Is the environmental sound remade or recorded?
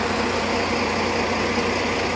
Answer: recorded